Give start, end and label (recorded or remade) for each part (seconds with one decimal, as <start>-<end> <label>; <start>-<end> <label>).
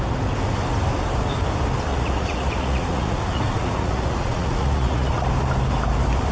0.0-1.9 recorded; 1.9-5.3 remade; 5.3-6.3 recorded